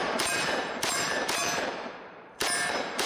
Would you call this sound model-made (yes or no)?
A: yes